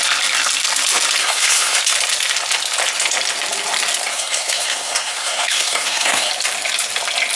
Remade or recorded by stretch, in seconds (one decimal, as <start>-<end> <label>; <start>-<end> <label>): 0.0-1.2 recorded; 1.2-1.8 remade; 1.8-4.1 recorded; 4.1-6.3 remade; 6.3-7.4 recorded